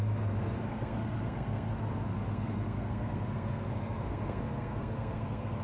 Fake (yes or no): yes